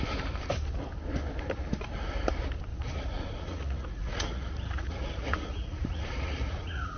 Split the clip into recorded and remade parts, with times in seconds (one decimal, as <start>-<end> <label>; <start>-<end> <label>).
0.0-2.7 recorded; 2.7-7.0 remade